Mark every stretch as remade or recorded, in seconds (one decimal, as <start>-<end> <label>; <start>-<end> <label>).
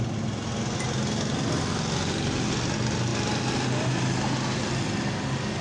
0.0-5.6 recorded